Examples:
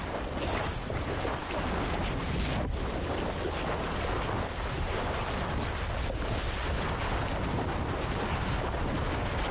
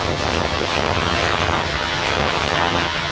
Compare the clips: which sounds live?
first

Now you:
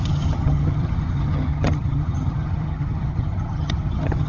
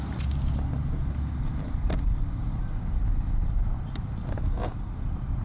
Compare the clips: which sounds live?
second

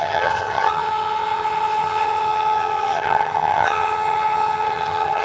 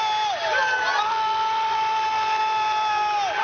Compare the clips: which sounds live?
second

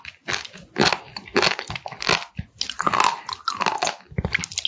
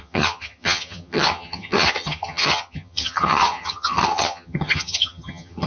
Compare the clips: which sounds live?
first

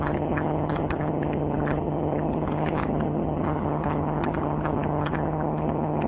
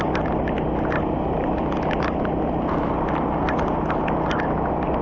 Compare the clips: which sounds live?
second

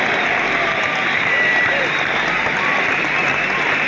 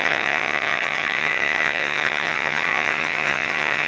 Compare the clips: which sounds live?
first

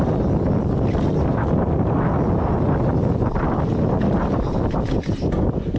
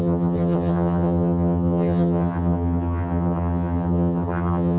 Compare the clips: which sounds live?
first